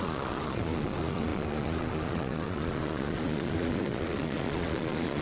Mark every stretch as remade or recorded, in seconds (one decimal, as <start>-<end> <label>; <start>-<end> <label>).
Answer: 0.0-5.2 remade

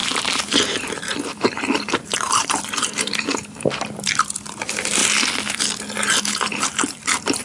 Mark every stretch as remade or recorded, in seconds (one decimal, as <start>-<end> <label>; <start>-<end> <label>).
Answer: 0.0-5.0 remade; 5.0-6.2 recorded; 6.2-7.4 remade